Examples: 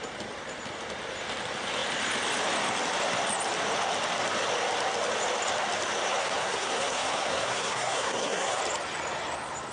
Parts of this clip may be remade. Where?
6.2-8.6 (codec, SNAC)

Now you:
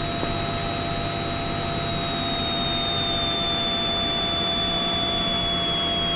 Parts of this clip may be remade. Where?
none